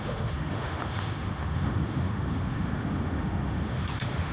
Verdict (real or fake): fake